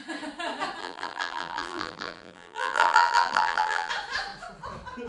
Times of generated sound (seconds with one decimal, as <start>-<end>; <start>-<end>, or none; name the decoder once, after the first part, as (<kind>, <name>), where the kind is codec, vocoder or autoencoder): 0.8-3.9 (vocoder, BigVGAN v2)